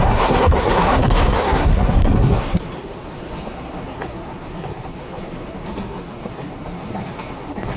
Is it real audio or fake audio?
fake